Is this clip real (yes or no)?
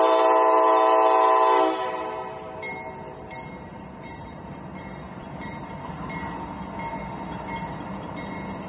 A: yes